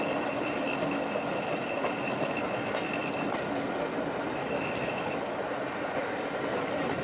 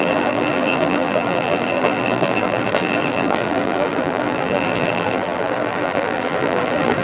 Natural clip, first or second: first